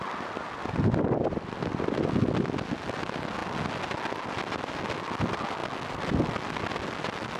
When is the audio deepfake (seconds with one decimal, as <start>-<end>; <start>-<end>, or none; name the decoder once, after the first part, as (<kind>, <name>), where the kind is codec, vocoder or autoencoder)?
none